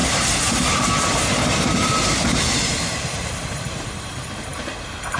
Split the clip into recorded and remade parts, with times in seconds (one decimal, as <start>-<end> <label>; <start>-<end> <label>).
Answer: 0.0-5.2 remade